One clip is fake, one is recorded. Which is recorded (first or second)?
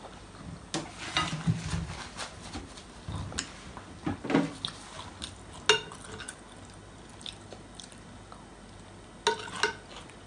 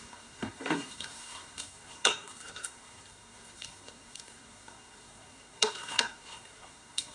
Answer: first